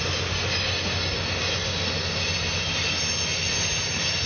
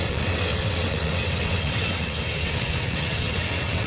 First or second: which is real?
first